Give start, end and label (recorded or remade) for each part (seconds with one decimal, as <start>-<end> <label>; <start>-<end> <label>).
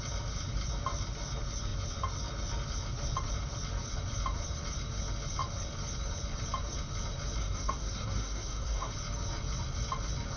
0.0-7.4 recorded; 7.4-8.9 remade; 8.9-10.4 recorded